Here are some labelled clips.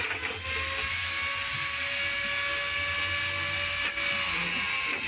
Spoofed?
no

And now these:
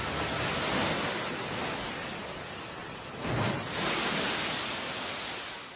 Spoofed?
no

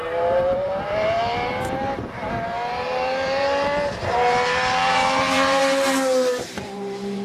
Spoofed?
yes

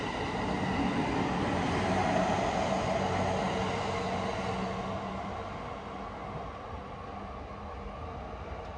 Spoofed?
no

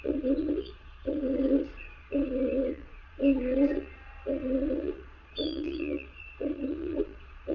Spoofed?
yes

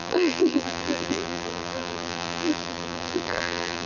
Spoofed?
yes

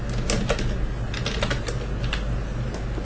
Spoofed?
no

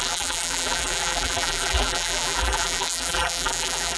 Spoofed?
yes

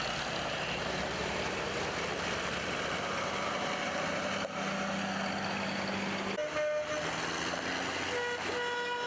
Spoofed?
no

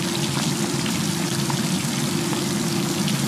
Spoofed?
no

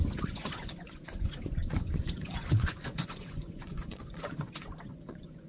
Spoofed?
yes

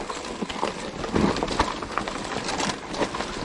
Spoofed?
no